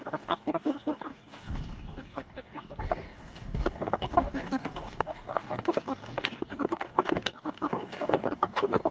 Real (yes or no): no